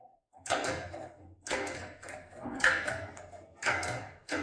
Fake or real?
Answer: fake